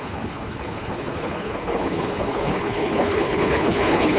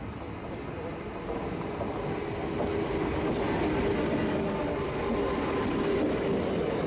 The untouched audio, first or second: second